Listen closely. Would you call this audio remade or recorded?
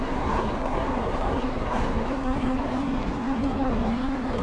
remade